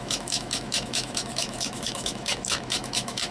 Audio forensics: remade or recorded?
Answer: remade